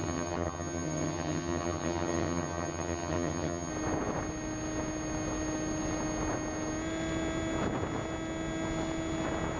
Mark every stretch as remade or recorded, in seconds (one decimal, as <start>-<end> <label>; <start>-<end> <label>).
0.0-3.7 remade; 3.7-9.6 recorded